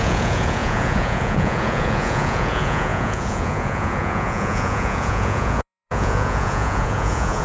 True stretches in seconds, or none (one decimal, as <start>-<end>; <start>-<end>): none